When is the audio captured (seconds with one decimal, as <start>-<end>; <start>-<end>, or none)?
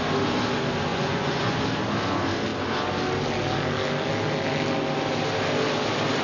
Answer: 0.0-0.9; 1.6-6.2